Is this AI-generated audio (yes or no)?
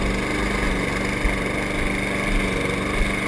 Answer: no